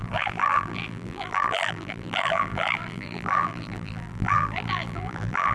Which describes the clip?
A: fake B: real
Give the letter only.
A